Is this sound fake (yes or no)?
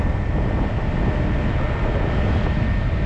no